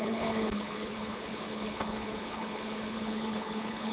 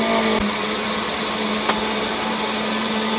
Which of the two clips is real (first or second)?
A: second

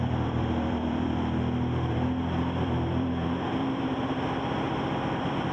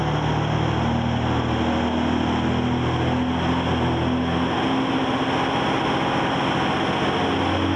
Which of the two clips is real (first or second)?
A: second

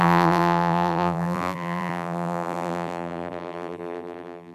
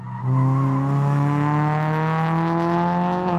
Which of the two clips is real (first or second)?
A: second